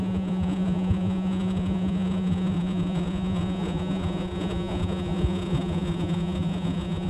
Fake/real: fake